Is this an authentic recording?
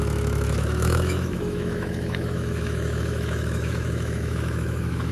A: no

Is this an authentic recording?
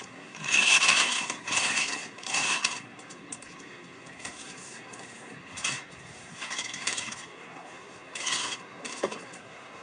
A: no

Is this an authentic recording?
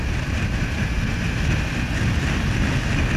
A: yes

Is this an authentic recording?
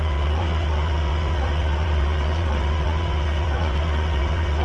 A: no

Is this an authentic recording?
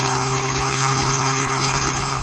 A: no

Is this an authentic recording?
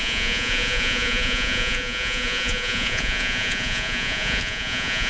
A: no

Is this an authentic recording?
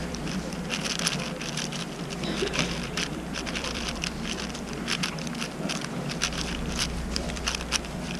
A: no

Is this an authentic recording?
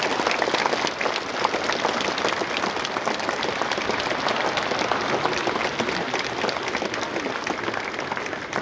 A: yes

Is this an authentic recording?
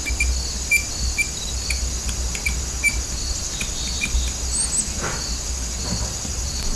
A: yes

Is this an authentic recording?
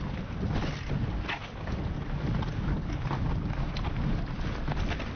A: yes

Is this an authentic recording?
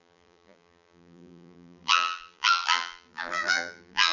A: no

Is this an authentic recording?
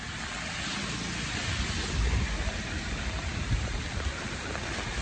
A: yes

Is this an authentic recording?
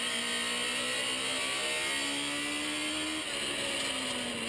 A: yes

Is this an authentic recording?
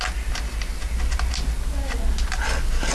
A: yes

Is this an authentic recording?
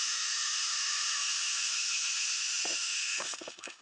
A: no